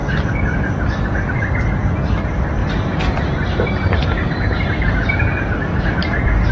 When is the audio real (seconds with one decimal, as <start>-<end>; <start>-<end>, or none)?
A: 1.4-2.6